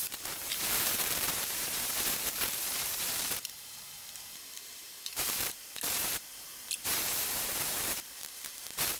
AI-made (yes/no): yes